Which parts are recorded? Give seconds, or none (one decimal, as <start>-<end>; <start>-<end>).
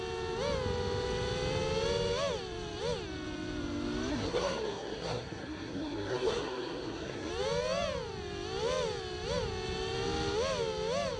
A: 0.0-4.1; 7.3-11.2